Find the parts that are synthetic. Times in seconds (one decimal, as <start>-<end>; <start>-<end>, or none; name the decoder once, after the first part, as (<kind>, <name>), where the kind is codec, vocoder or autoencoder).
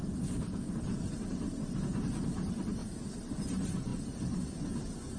0.0-0.7 (vocoder, BigVGAN v2); 2.8-3.4